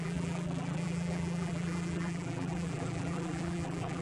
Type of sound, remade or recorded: remade